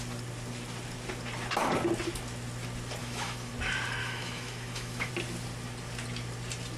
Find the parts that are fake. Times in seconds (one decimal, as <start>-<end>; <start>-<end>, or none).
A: 3.0-3.5; 4.0-5.1